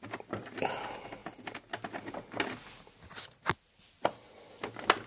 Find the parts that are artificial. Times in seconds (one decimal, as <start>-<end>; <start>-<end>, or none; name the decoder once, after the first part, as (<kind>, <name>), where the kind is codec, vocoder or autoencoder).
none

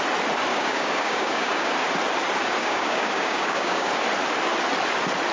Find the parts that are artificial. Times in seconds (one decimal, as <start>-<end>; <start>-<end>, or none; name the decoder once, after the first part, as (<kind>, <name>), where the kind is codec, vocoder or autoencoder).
0.5-1.7 (codec, DAC); 2.6-3.9

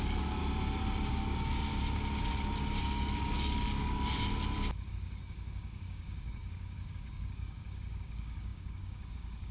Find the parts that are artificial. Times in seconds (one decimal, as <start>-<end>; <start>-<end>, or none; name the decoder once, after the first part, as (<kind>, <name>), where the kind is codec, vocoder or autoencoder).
0.0-0.4 (codec, DAC); 1.1-1.7; 2.8-4.3; 4.9-9.5

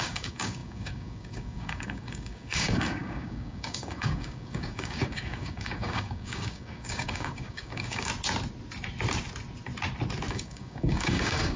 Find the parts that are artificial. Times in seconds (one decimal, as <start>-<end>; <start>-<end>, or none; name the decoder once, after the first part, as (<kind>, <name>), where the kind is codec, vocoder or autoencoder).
0.0-8.1 (codec, DAC); 10.3-11.6

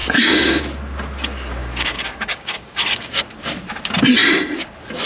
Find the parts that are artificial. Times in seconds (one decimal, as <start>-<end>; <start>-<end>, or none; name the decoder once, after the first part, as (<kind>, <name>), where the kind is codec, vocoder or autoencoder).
0.0-0.6 (codec, DAC); 1.6-3.2